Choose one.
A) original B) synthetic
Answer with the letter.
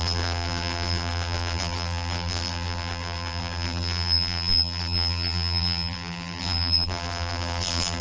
B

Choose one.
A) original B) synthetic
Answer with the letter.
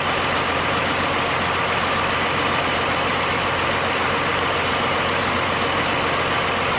A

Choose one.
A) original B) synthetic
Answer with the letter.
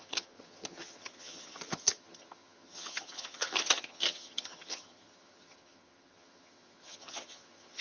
B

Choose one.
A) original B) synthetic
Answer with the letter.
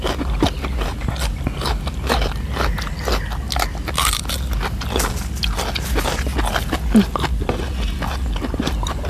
A